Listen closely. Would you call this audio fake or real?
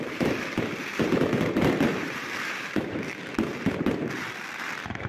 fake